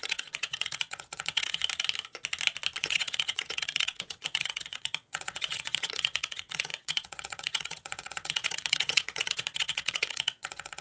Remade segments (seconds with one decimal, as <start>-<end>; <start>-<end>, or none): 0.0-1.6; 2.8-10.8